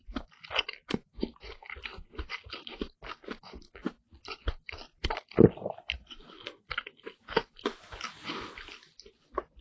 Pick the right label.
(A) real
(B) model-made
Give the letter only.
A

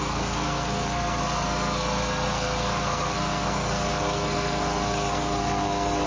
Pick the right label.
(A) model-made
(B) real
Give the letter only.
A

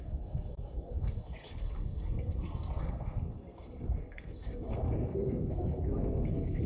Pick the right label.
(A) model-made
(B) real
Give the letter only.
A